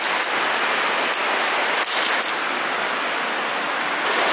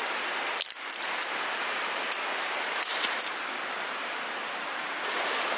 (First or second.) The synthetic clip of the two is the second